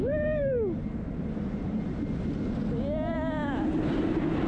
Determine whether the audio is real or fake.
real